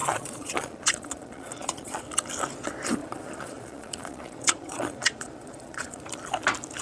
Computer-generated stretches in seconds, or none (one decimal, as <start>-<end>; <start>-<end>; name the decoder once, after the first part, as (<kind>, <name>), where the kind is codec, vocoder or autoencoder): 0.0-2.0 (vocoder, Vocos); 3.0-6.0